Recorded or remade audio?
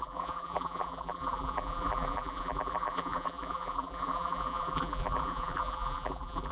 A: remade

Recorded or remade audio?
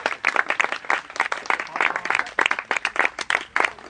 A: recorded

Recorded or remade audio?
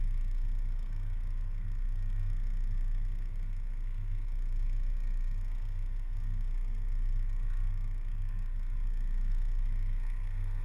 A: remade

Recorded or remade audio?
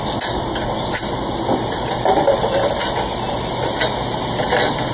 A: recorded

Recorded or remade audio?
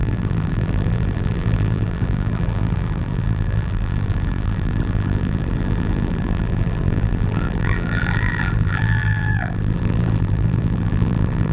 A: remade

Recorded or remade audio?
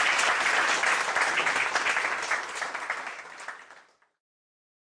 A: recorded